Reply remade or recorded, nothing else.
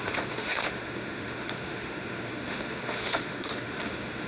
remade